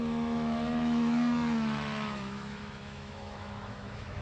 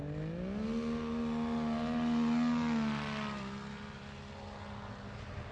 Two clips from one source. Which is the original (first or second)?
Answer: second